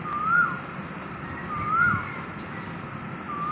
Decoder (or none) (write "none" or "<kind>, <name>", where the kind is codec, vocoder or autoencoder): none